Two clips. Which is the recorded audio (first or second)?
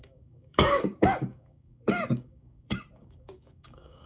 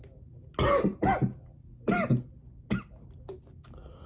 second